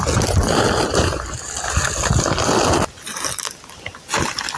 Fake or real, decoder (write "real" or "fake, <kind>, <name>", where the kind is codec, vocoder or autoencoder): real